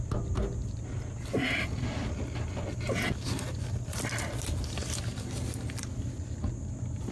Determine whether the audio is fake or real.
real